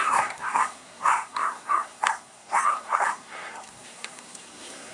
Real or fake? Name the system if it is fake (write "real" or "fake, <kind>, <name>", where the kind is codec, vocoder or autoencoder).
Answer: fake, codec, SNAC